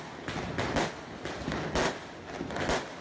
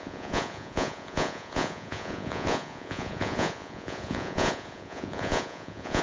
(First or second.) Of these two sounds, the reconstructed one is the second